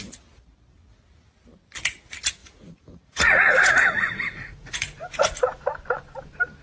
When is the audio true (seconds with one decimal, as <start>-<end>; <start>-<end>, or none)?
0.0-2.4; 5.1-6.6

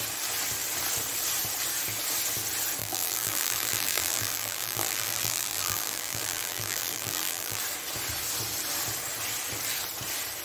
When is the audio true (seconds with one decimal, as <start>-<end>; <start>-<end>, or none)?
0.0-2.8; 7.6-10.4

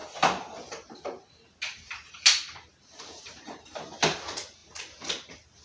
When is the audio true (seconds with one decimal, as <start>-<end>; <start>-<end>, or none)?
0.0-5.6

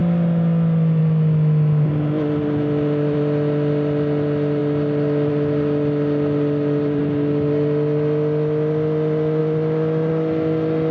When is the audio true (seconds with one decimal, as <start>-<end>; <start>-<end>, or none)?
0.0-10.9

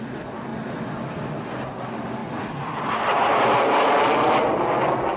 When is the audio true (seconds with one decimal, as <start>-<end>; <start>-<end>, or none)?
0.0-5.2

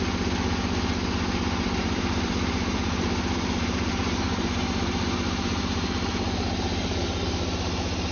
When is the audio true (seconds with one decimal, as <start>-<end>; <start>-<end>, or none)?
0.0-1.8; 6.1-8.1

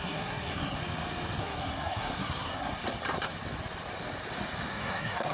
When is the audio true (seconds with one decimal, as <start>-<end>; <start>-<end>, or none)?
0.8-1.4; 2.8-4.7